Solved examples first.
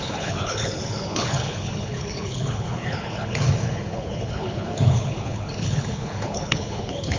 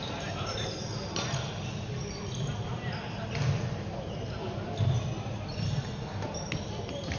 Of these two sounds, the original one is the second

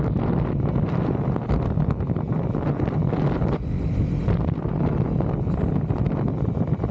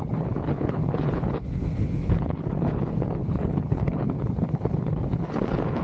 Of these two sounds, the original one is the first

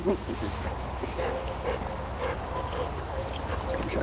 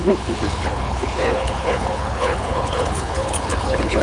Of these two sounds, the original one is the first